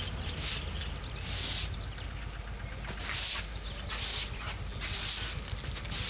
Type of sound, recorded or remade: recorded